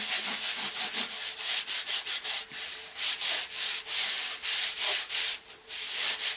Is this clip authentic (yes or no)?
yes